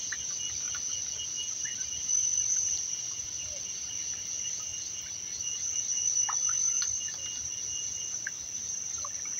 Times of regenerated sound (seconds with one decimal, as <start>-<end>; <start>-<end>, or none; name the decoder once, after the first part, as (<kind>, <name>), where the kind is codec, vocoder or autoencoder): none